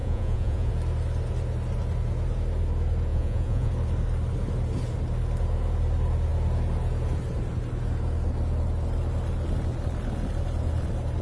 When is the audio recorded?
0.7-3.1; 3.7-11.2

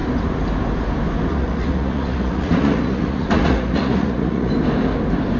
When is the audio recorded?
0.0-1.3; 4.5-5.4

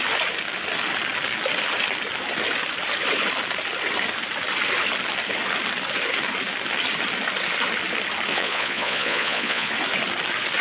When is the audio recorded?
0.0-8.3; 9.7-10.6

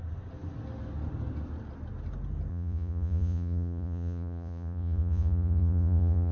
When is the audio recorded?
0.0-2.5

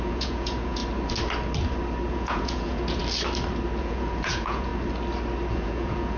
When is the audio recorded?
0.8-2.1; 3.0-3.8; 4.7-5.5